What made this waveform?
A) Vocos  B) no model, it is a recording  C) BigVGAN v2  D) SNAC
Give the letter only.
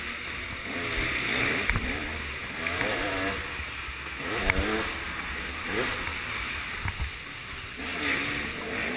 B